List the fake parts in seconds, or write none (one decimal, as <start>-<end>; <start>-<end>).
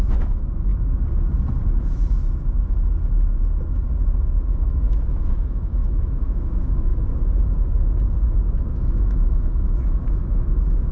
0.0-0.7; 4.5-6.9; 8.7-10.9